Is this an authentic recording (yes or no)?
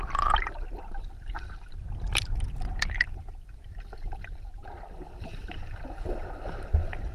yes